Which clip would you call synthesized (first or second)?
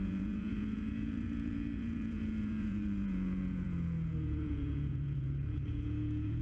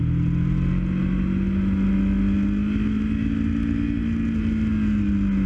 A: first